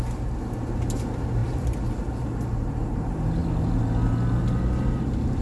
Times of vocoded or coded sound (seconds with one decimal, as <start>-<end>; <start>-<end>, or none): 1.4-2.2